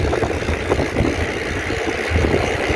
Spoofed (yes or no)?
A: no